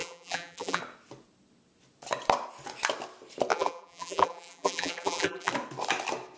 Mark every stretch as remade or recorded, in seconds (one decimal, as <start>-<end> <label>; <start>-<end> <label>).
0.0-0.8 remade; 0.8-3.5 recorded; 3.5-5.5 remade; 5.5-6.4 recorded